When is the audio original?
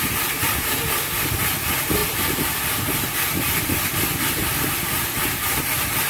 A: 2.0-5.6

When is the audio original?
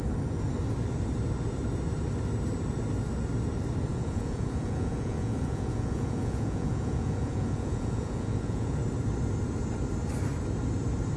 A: 0.0-3.9; 8.8-11.2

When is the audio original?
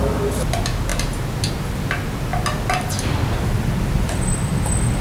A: 0.0-5.0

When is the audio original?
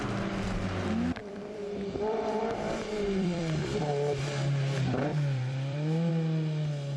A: 0.0-1.2; 3.9-5.1; 6.1-7.0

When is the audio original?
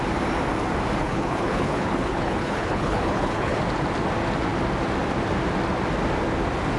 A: 0.0-1.0; 3.6-6.8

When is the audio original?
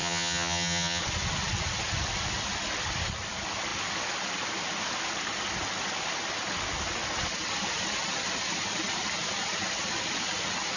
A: 1.0-10.8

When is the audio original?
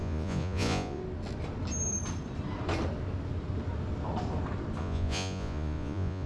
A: 1.0-4.8